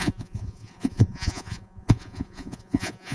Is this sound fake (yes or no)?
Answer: yes